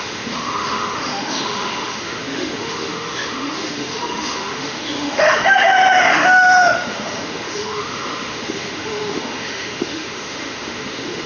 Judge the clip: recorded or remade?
remade